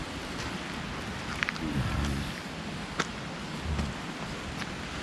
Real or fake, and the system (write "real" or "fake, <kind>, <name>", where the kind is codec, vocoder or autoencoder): real